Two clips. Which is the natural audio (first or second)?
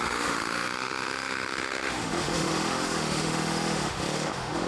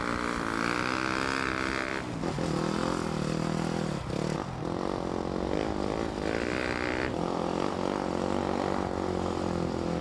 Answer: second